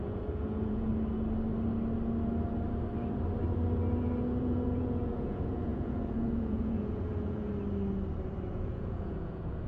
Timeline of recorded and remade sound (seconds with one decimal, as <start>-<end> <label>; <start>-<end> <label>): 0.0-0.9 remade; 0.9-4.4 recorded; 4.4-7.5 remade; 7.5-8.5 recorded; 8.5-9.7 remade